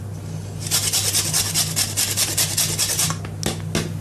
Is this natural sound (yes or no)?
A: yes